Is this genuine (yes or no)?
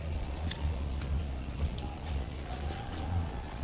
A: no